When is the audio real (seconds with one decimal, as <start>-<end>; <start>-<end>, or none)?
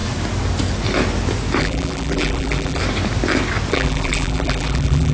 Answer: 0.0-1.6; 2.8-3.7